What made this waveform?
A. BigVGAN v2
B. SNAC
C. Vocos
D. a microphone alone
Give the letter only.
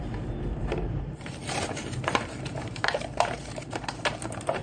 A